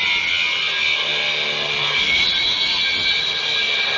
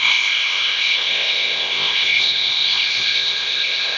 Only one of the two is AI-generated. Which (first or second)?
second